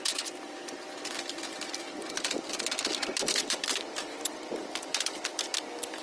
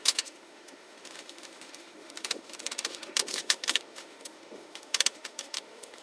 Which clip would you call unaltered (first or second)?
first